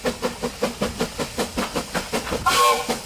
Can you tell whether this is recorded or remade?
recorded